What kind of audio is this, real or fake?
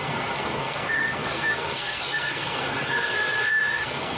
fake